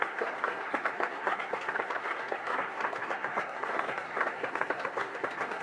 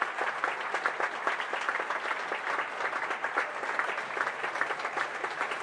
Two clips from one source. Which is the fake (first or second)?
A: first